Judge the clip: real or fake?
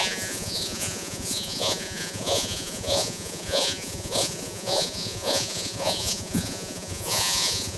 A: fake